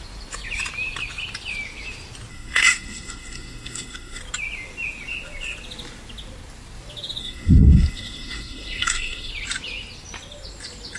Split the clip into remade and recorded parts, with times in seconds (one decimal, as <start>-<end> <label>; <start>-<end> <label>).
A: 0.0-2.3 recorded; 2.3-4.2 remade; 4.2-7.2 recorded; 7.2-9.3 remade; 9.3-11.0 recorded